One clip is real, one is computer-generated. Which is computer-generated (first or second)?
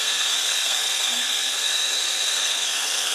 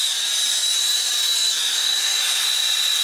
first